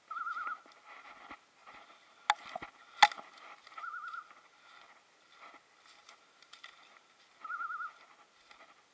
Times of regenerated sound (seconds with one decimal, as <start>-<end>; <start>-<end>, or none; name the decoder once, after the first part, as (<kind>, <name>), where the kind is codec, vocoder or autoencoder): none